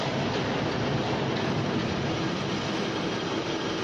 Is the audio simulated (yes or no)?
no